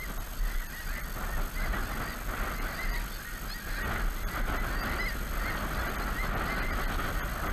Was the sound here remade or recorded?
recorded